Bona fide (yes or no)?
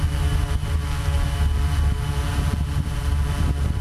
yes